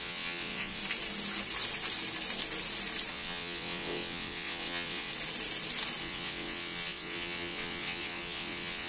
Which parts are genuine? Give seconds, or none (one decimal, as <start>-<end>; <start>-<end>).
0.8-3.1; 5.1-6.0